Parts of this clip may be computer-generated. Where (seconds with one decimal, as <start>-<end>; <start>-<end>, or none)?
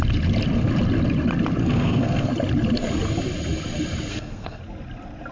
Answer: 1.6-2.3; 4.1-4.6